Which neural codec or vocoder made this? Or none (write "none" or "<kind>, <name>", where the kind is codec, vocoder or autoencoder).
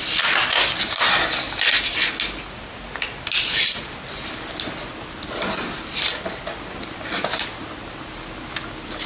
none